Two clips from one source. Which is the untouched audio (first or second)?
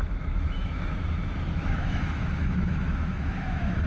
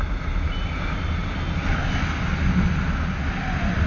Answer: second